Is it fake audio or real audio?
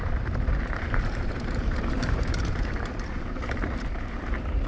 fake